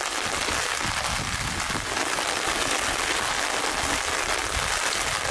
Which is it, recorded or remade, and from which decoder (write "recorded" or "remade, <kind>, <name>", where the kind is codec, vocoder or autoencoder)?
recorded